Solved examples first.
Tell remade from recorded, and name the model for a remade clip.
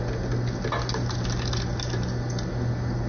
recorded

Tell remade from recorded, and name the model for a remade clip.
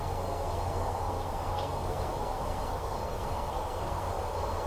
remade, codec, SNAC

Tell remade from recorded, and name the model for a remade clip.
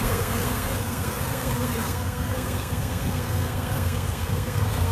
remade, codec, SNAC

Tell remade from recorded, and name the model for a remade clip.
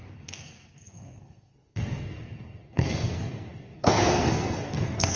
remade, codec, SNAC